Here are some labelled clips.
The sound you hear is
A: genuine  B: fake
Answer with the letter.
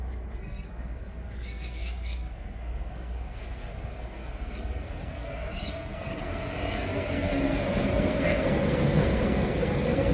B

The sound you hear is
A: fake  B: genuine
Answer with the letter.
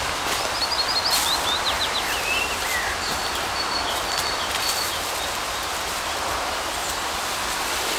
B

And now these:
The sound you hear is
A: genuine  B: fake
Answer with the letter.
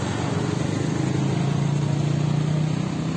A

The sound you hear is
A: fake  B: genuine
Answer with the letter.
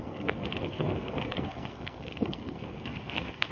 A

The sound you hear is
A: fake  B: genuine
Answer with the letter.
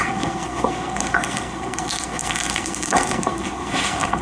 A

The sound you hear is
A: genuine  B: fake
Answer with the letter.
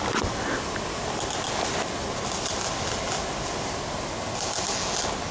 A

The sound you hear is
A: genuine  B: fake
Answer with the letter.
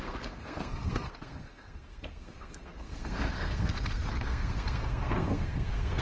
B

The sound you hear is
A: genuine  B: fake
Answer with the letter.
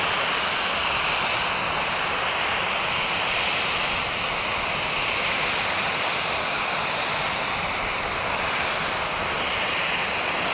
A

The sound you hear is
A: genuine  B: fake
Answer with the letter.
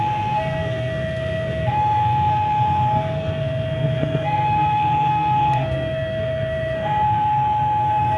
B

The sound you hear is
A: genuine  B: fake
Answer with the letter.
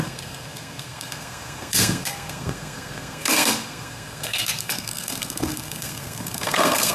B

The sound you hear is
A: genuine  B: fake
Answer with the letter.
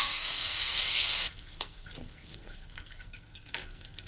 B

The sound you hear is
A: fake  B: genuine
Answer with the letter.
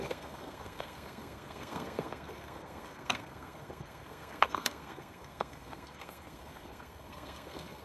A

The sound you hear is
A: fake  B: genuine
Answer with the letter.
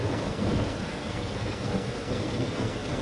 A